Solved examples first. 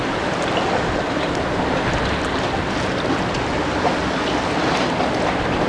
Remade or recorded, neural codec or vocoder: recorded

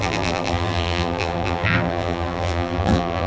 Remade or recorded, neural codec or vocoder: remade, vocoder, BigVGAN v2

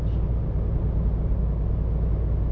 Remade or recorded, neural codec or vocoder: recorded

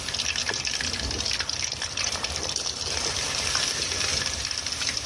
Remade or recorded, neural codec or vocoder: recorded